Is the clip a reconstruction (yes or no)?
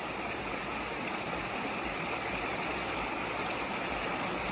no